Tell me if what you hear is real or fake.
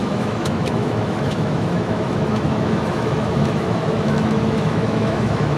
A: fake